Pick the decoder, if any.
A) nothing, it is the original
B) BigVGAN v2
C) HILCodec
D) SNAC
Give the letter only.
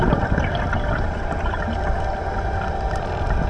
A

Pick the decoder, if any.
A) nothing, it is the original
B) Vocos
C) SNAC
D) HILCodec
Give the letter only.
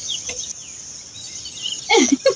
A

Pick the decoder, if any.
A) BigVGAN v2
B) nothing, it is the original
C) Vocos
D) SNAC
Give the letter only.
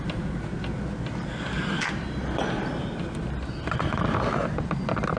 B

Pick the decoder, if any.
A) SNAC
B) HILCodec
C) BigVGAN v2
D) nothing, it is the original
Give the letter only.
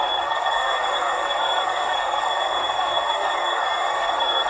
A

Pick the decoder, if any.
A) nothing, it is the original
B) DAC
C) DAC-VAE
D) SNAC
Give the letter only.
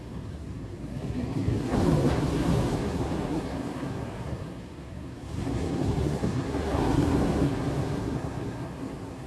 D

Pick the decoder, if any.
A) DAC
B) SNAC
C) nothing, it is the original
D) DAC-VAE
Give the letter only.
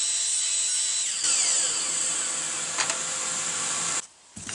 C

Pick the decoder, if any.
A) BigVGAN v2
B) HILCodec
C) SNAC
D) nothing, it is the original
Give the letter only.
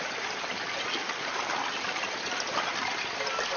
D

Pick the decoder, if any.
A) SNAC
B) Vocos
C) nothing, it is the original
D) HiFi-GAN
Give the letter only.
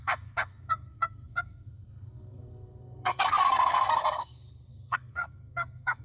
A